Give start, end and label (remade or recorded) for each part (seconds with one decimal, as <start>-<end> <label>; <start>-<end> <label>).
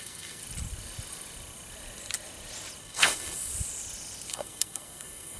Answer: 0.0-0.4 remade; 0.4-2.8 recorded; 2.8-3.5 remade; 3.5-4.3 recorded; 4.3-5.4 remade